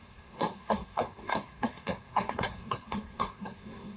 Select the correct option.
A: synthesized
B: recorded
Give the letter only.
A